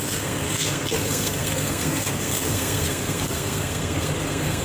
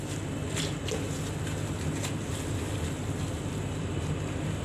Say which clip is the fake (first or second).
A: first